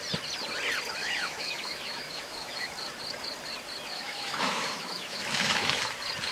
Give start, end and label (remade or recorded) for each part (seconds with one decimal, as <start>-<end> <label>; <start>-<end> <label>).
0.0-1.0 recorded; 1.0-2.7 remade; 2.7-3.9 recorded; 3.9-5.8 remade; 5.8-6.3 recorded